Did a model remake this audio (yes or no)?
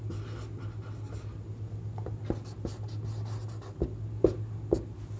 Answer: no